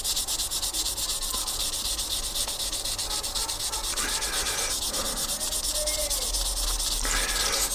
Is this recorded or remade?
recorded